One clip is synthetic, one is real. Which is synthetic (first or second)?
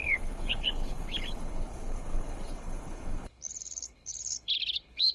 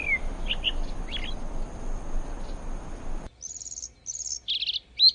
first